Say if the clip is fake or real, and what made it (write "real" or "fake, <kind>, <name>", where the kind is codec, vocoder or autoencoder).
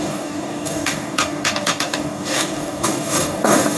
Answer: fake, codec, DAC